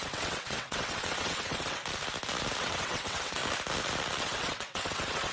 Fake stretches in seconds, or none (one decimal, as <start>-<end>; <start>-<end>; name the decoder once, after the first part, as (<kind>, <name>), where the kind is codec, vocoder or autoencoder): 0.0-1.8 (vocoder, WaveNeXt); 2.6-3.4; 4.2-5.3